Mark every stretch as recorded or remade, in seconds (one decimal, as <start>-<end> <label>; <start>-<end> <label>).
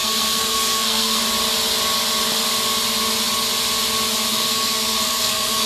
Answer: 0.0-1.2 remade; 1.2-4.3 recorded; 4.3-5.7 remade